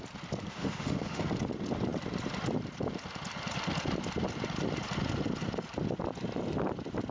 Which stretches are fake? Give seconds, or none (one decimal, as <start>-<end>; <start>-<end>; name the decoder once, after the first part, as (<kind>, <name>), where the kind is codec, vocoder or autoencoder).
0.5-1.2 (autoencoder, DAC-VAE)